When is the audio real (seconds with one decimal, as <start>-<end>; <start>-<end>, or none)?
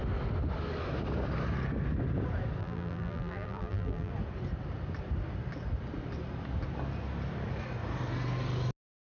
0.0-2.6; 4.1-9.0